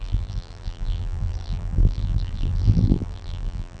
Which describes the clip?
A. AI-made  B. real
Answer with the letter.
A